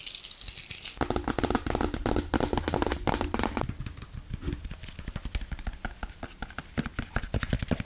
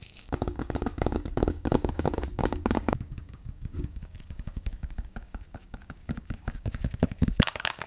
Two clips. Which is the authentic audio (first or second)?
first